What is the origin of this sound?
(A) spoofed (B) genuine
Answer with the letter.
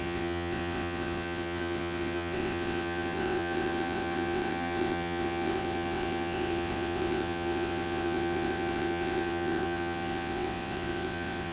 A